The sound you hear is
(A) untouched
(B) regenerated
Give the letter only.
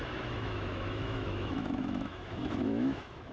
B